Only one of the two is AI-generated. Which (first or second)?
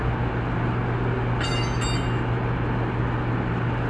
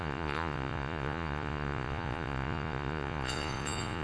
second